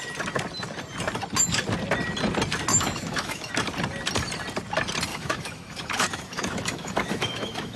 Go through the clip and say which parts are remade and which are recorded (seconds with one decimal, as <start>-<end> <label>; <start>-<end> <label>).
0.0-2.7 recorded; 2.7-3.5 remade; 3.5-5.1 recorded; 5.1-7.8 remade